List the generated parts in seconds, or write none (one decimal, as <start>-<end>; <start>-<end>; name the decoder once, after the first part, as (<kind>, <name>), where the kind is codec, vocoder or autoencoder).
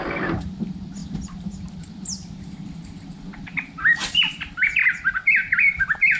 0.0-6.2 (vocoder, BigVGAN v2)